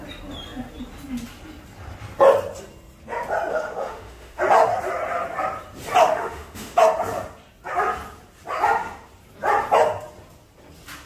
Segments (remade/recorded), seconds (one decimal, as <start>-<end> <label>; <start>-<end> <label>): 0.0-3.5 recorded; 3.5-4.4 remade; 4.4-6.0 recorded; 6.0-6.8 remade; 6.8-11.1 recorded